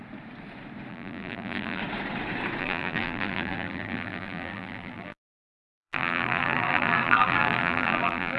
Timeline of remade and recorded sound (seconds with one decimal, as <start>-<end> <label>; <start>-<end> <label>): 0.0-0.9 recorded; 0.9-1.8 remade; 1.8-2.6 recorded; 2.6-8.4 remade